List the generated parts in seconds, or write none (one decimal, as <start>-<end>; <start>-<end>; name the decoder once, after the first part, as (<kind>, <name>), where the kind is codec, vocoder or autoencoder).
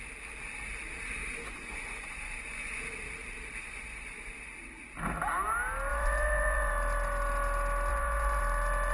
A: 1.2-2.8 (vocoder, Vocos); 3.6-4.5; 5.9-6.7; 7.9-8.4